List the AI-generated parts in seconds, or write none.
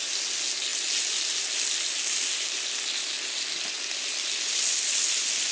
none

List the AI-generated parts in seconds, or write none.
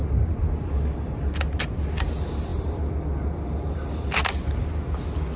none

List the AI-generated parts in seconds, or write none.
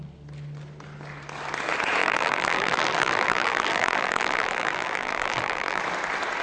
2.0-5.8 (vocoder, BigVGAN v2)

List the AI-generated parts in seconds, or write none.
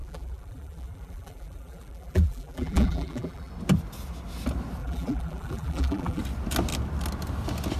0.0-3.5 (vocoder, BigVGAN v2); 4.8-6.2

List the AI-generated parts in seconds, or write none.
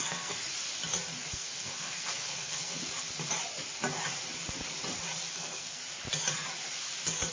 0.0-0.4 (codec, SNAC); 1.3-2.8; 5.3-5.8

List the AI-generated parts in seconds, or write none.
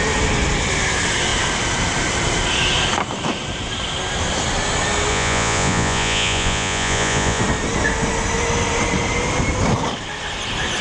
5.1-7.4 (vocoder, Vocos)